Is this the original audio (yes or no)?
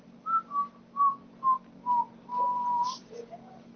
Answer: yes